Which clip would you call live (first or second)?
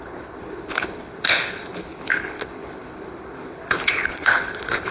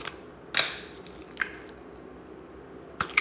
second